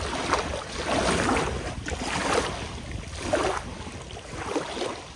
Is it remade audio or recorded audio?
recorded